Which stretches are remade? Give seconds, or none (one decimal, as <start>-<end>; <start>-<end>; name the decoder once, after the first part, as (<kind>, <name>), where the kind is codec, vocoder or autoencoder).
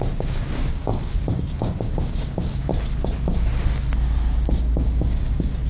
0.0-2.7 (codec, DAC); 4.3-5.7